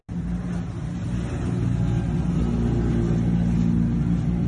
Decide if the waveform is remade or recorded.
recorded